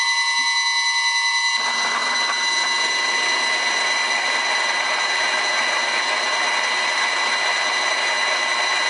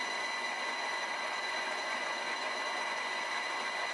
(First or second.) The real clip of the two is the first